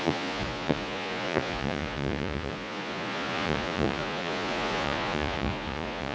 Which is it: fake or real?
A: fake